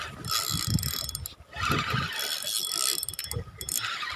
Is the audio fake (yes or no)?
no